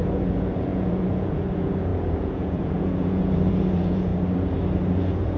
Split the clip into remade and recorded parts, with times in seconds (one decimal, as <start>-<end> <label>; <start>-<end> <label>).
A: 0.0-4.1 remade; 4.1-4.9 recorded; 4.9-5.4 remade